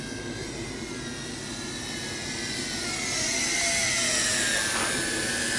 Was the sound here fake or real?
real